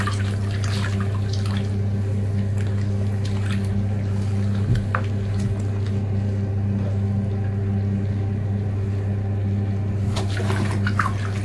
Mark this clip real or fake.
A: real